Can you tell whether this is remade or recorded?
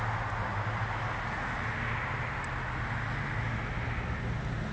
recorded